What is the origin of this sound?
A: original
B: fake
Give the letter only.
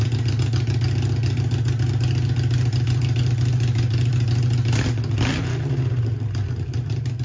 A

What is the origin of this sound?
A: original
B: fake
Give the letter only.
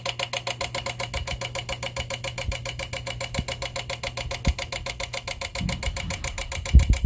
A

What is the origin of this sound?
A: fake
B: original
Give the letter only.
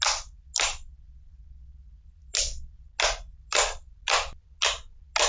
B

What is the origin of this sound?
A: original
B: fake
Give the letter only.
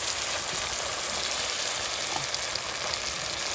A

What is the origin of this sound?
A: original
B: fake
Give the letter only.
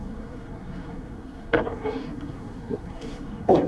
B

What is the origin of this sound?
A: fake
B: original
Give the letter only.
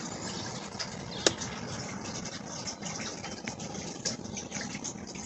B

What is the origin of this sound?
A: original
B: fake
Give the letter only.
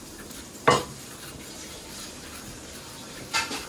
B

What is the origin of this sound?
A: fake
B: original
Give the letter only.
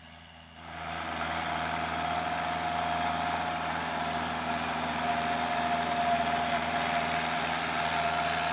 B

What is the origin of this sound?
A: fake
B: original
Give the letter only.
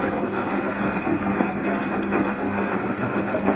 A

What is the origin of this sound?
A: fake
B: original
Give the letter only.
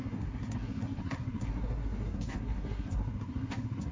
A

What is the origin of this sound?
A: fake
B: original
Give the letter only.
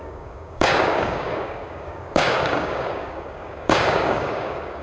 A